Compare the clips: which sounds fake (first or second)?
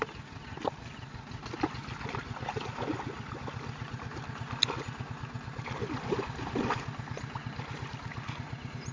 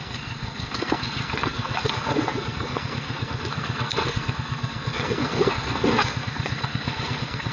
second